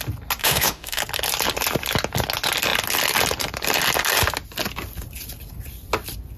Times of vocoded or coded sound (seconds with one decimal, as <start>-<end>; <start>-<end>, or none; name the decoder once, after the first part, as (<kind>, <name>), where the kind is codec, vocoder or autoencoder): 0.4-1.0 (autoencoder, DAC-VAE)